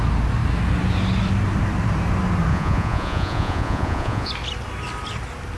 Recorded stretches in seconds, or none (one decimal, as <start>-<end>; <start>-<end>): 0.0-2.5; 4.3-5.6